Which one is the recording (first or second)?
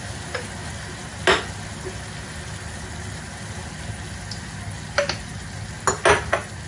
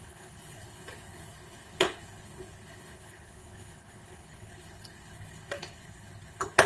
first